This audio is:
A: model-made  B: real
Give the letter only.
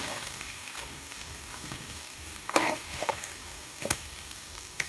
A